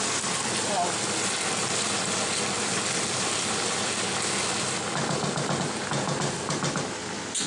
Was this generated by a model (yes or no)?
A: no